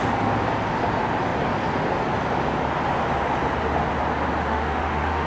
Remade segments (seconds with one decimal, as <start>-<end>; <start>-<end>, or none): 4.5-5.3